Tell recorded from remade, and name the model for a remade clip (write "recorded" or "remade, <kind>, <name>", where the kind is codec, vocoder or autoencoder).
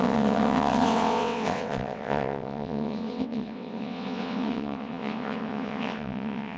remade, vocoder, WaveNeXt